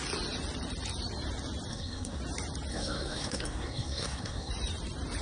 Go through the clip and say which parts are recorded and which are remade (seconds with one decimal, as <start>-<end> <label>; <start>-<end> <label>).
0.0-1.7 recorded; 1.7-2.2 remade; 2.2-2.7 recorded; 2.7-4.5 remade; 4.5-5.2 recorded

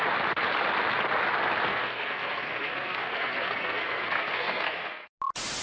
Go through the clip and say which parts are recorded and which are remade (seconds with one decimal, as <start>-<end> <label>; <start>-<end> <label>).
0.0-1.7 recorded; 1.7-5.1 remade; 5.1-5.6 recorded

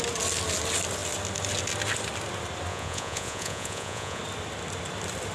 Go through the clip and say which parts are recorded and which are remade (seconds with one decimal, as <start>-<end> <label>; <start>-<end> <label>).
0.0-2.7 recorded; 2.7-4.2 remade; 4.2-5.3 recorded